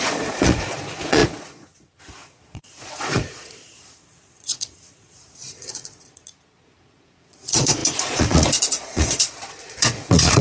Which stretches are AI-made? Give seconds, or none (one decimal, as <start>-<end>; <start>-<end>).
0.0-10.4